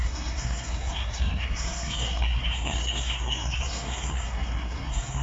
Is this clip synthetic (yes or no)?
yes